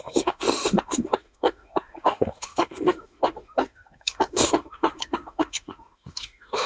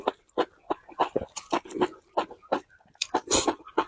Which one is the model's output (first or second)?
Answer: first